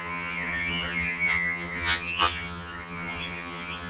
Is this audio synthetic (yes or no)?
yes